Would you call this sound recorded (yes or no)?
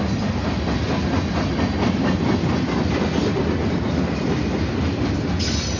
yes